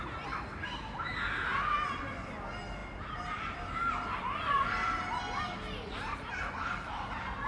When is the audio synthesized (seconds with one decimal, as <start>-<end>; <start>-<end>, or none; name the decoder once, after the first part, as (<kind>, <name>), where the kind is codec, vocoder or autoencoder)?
1.5-2.0 (vocoder, BigVGAN v2); 2.8-7.1